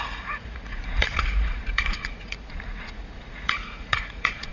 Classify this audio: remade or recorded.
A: remade